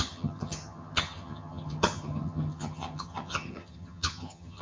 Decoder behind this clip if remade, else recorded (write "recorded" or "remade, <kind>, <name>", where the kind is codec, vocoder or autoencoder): remade, vocoder, HiFi-GAN